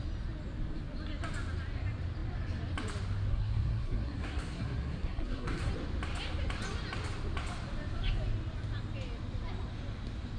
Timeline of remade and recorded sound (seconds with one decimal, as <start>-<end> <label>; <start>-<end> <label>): 0.0-3.3 recorded; 3.3-5.7 remade; 5.7-10.4 recorded